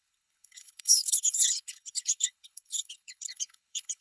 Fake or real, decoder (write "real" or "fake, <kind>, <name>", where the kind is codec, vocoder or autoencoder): fake, codec, HILCodec